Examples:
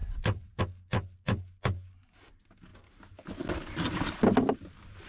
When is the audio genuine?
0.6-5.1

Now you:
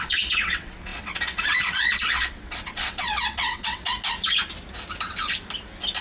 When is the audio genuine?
3.9-6.0

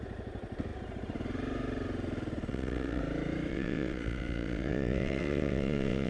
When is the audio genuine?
0.0-2.5; 3.0-3.5

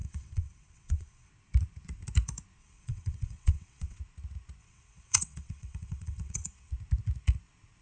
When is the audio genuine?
1.3-2.6; 4.0-4.6; 6.7-7.8

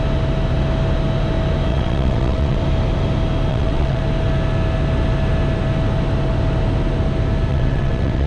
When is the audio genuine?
0.0-1.7; 2.6-3.5; 4.0-7.5

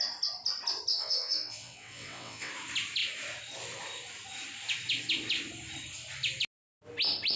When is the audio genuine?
0.0-0.9; 2.5-7.4

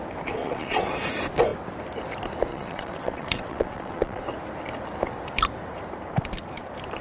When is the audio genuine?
0.0-0.4; 0.9-2.5; 4.2-7.0